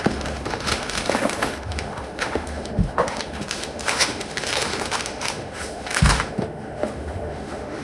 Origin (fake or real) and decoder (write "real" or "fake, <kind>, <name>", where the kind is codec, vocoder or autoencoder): fake, autoencoder, DAC-VAE